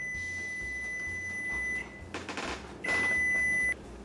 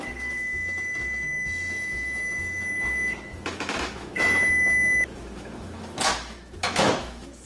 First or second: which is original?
first